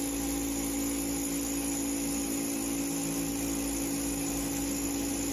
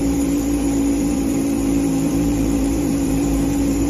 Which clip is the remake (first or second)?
second